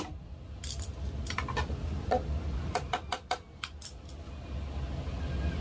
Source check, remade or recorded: recorded